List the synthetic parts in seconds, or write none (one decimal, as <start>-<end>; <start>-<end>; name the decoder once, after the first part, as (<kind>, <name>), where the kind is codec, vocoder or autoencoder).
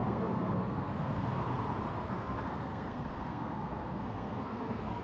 0.0-1.5 (codec, SNAC); 1.9-5.0